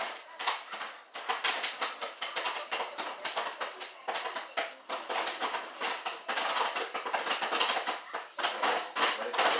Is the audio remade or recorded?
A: recorded